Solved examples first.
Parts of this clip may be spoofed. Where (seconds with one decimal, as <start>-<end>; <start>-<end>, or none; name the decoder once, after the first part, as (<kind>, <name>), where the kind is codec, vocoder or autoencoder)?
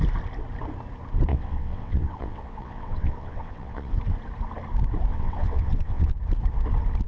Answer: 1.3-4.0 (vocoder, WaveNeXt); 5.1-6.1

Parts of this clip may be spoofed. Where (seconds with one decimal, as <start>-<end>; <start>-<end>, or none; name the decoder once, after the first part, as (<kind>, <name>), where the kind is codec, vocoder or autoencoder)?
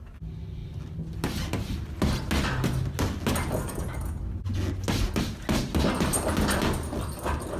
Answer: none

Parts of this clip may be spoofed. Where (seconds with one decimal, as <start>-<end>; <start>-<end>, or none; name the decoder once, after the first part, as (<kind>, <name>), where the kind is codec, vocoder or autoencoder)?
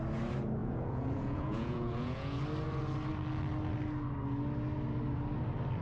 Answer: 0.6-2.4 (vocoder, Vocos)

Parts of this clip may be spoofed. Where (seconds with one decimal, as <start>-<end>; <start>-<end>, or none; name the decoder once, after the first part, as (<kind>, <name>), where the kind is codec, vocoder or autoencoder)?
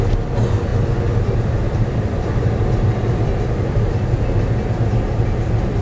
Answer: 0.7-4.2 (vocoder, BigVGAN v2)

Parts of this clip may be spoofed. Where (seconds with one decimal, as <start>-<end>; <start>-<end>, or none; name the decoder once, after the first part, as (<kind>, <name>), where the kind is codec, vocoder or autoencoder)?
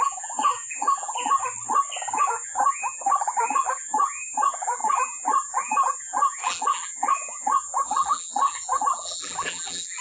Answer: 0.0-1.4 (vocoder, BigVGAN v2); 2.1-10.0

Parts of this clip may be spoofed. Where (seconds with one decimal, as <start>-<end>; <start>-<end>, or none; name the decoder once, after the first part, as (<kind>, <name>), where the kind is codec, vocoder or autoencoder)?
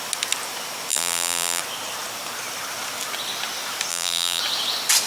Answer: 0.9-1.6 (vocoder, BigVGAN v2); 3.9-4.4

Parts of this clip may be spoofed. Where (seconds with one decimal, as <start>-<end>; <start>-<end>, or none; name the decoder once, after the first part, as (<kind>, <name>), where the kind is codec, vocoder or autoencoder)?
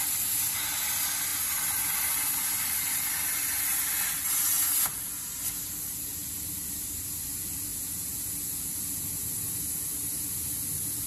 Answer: none